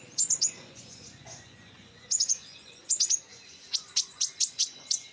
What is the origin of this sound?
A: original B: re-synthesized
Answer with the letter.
B